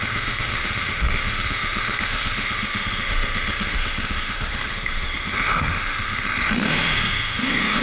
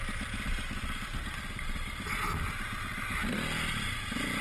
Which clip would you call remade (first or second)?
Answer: first